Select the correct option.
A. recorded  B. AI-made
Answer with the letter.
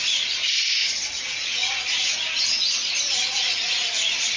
B